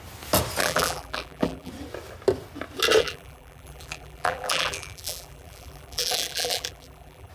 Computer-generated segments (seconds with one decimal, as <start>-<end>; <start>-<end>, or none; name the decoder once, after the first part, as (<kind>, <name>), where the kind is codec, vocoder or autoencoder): 0.6-1.7 (vocoder, BigVGAN v2); 3.0-7.3